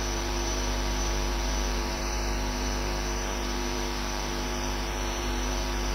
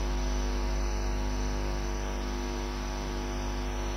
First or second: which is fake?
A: first